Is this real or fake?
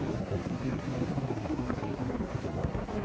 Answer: fake